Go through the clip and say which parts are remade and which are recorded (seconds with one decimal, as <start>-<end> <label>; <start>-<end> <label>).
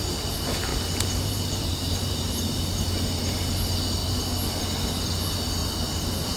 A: 0.0-0.7 recorded; 0.7-2.6 remade; 2.6-5.6 recorded; 5.6-6.4 remade